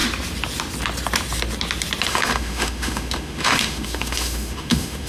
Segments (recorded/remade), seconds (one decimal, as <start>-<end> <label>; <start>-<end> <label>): 0.0-2.1 recorded; 2.1-5.1 remade